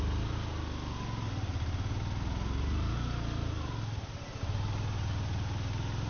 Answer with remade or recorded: recorded